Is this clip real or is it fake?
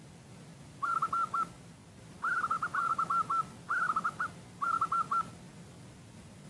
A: real